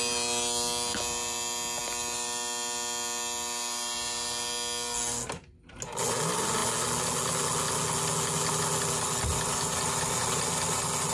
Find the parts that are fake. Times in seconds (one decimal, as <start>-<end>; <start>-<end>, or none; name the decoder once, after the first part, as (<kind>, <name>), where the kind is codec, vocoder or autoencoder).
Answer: none